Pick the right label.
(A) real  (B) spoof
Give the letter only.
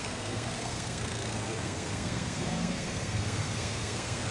B